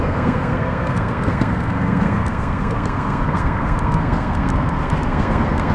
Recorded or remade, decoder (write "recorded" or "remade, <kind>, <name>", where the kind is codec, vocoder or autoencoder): remade, codec, SNAC